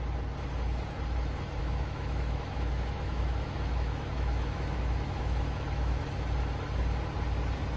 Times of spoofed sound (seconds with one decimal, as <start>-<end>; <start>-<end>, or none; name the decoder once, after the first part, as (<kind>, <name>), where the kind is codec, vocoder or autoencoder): 1.6-6.0 (autoencoder, DAC-VAE)